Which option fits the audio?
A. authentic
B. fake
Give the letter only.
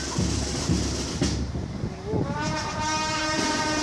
A